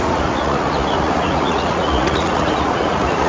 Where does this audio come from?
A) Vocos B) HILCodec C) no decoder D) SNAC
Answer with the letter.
A